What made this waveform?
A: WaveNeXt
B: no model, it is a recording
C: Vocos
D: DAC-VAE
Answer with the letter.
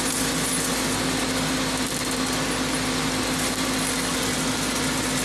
B